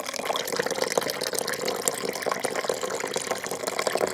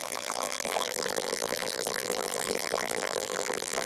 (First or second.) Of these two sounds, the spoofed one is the second